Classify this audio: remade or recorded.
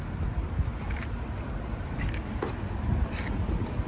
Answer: recorded